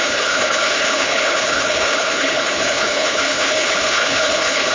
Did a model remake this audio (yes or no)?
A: yes